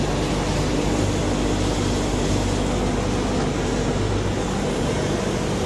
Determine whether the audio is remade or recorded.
recorded